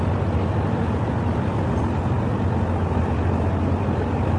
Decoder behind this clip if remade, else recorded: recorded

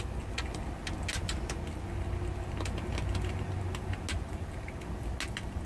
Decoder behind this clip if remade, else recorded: recorded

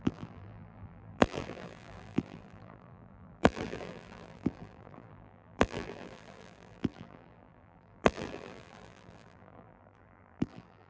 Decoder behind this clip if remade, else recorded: remade, vocoder, BigVGAN v2